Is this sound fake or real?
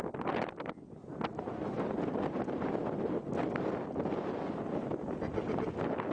real